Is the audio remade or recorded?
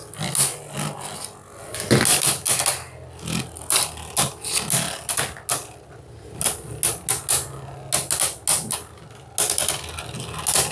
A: recorded